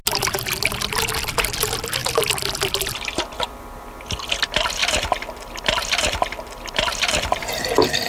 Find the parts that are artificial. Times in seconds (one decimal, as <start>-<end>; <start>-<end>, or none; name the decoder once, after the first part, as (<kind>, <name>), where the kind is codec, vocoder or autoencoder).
4.8-7.6 (vocoder, BigVGAN v2)

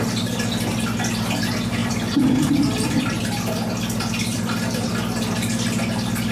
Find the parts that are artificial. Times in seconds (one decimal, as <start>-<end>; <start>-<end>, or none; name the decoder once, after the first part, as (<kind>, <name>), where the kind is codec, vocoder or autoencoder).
1.8-3.0 (vocoder, BigVGAN v2); 4.3-4.9

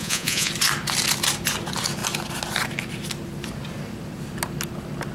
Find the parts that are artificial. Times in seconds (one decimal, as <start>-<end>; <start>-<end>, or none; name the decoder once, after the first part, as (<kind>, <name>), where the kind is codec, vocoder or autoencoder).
0.0-0.5 (vocoder, Vocos)

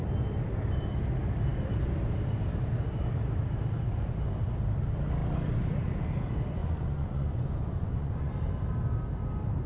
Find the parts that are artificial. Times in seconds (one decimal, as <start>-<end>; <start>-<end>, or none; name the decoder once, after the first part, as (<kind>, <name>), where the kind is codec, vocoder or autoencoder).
6.6-8.3 (vocoder, Vocos)

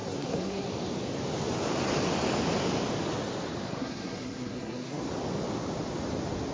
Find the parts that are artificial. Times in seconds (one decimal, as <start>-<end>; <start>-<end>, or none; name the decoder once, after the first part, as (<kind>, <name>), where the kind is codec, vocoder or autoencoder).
0.0-0.7 (codec, SNAC); 3.7-5.1

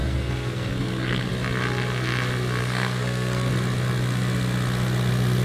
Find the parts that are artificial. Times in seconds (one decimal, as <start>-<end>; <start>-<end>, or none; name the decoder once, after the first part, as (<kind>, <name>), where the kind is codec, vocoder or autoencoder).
0.0-1.3 (codec, SNAC); 2.6-3.5